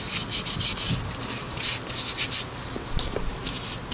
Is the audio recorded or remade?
recorded